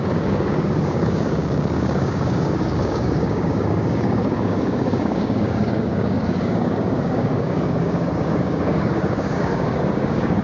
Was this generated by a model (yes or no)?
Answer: yes